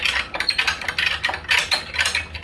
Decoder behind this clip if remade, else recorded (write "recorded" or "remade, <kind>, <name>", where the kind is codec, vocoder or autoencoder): recorded